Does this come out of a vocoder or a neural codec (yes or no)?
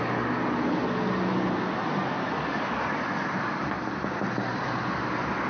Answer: no